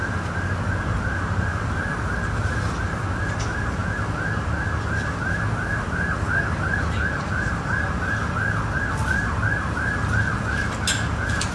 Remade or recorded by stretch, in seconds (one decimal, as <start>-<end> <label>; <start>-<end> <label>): 0.0-11.5 recorded